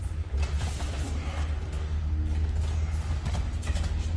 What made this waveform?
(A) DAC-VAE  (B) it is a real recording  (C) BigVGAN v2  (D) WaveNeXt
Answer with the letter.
B